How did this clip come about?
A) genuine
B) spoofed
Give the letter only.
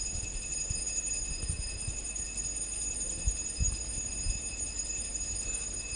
A